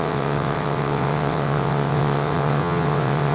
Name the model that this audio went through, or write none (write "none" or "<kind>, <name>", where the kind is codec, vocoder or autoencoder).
vocoder, WaveNeXt